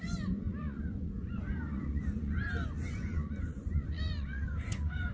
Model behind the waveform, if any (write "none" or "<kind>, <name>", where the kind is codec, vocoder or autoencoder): vocoder, Vocos